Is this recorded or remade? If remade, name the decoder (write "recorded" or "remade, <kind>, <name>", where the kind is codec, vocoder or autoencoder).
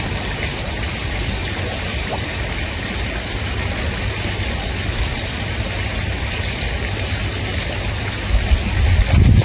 recorded